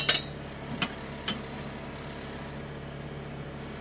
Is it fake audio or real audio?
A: real